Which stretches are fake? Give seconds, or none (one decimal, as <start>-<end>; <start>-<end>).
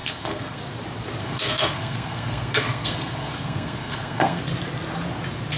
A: 0.0-0.6; 1.2-4.4